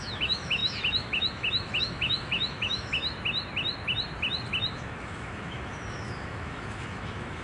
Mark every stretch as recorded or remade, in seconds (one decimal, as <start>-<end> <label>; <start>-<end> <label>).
0.0-3.0 remade; 3.0-4.7 recorded; 4.7-7.4 remade